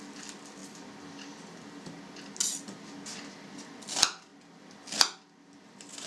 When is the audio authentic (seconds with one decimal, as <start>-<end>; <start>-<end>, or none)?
0.0-6.1